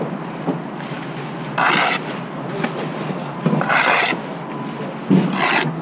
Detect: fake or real real